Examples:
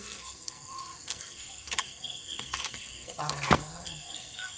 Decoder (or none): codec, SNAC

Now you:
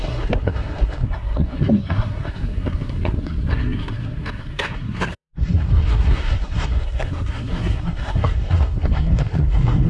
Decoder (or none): codec, SNAC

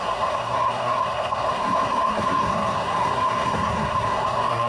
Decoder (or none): codec, SNAC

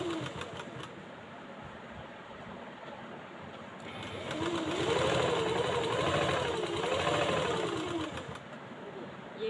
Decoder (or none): none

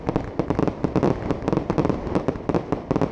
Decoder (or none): none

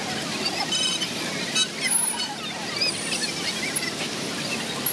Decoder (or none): none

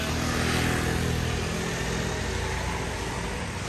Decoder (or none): none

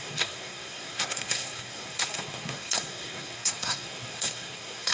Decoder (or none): codec, SNAC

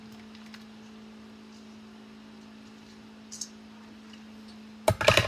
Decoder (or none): none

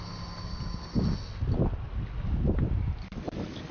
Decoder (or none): none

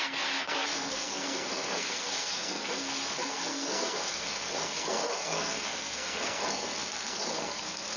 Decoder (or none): codec, SNAC